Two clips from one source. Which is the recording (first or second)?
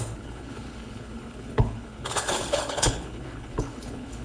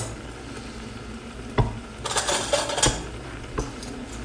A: second